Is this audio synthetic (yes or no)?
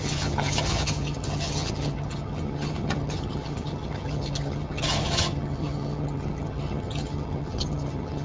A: yes